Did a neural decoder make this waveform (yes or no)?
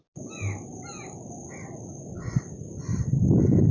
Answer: no